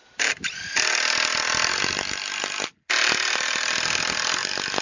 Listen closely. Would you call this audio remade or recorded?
recorded